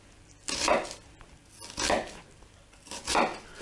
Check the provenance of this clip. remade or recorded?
recorded